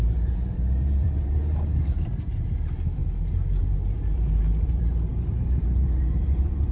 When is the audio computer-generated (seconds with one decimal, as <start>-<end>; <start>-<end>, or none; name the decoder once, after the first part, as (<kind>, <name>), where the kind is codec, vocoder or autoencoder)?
0.0-3.0 (vocoder, BigVGAN v2); 3.6-6.7